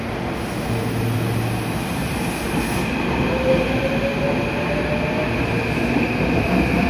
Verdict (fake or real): real